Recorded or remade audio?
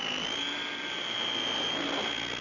recorded